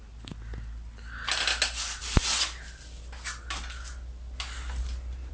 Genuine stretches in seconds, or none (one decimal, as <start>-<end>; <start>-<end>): 0.0-5.3